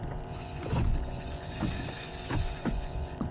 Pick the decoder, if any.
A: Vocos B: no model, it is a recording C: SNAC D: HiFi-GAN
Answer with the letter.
A